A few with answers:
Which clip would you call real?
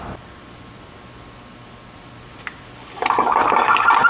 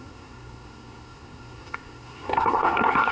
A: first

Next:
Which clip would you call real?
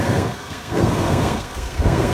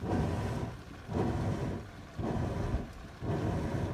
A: second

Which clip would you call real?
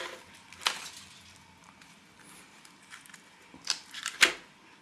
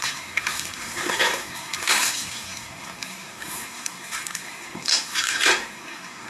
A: first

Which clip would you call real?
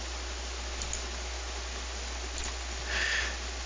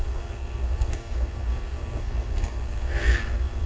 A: first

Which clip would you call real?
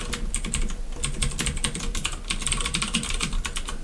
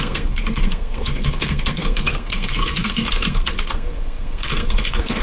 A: first